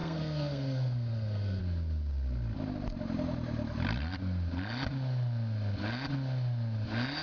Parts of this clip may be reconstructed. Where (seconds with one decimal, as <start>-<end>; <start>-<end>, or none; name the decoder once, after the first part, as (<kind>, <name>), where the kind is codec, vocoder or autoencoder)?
0.0-1.6 (codec, SNAC)